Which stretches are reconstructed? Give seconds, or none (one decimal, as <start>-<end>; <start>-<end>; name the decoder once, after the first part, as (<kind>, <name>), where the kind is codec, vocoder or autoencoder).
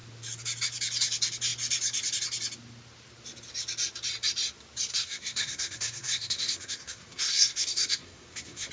4.9-8.7 (codec, SNAC)